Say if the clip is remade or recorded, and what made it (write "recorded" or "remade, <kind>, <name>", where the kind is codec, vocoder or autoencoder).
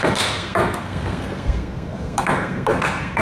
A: remade, codec, SNAC